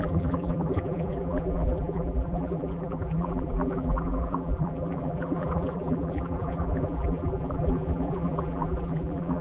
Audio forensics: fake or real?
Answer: fake